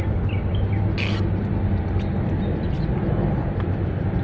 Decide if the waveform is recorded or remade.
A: recorded